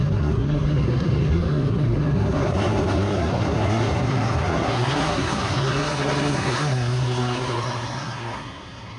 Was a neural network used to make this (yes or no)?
yes